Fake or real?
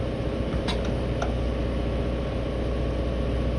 real